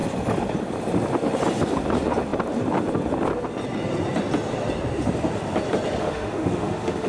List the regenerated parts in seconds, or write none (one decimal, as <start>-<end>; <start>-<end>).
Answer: 6.0-7.1

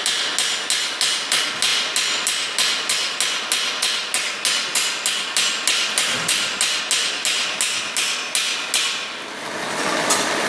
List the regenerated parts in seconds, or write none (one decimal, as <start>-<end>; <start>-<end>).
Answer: none

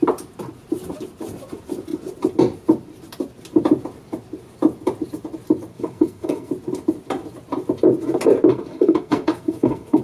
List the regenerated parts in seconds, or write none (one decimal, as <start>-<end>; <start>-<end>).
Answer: 5.7-6.5; 8.5-10.0

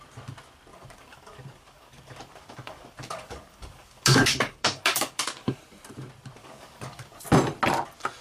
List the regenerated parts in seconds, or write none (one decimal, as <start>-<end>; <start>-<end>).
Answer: 0.7-5.6; 6.4-7.2

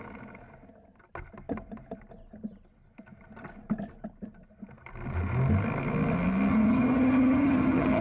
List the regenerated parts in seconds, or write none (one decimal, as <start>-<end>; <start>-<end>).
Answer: 6.5-8.0

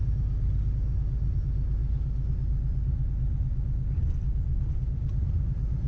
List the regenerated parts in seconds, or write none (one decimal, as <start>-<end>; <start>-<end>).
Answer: none